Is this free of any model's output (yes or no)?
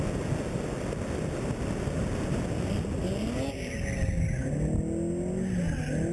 yes